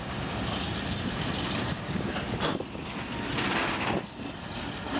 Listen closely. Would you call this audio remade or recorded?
recorded